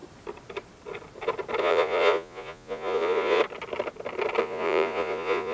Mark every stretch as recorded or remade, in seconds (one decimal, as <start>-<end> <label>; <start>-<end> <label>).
0.0-1.6 recorded; 1.6-3.4 remade; 3.4-4.4 recorded; 4.4-5.5 remade